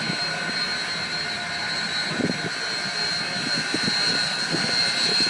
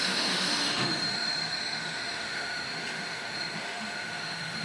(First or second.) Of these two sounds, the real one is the first